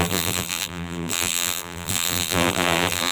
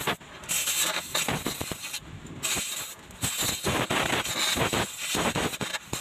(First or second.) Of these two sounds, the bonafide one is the second